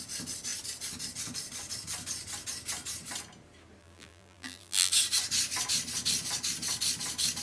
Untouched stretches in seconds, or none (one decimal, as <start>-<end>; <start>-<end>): 0.0-3.8; 4.9-7.4